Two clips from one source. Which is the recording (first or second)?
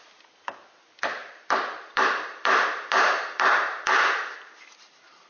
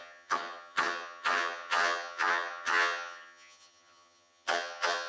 first